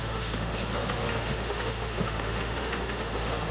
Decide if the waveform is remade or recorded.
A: remade